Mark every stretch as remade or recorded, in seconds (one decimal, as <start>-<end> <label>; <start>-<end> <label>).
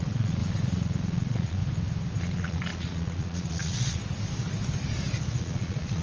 0.0-1.6 remade; 1.6-2.2 recorded; 2.2-4.0 remade; 4.0-5.4 recorded; 5.4-6.0 remade